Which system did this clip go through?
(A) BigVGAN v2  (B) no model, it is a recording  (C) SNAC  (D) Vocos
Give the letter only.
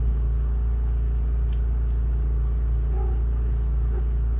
B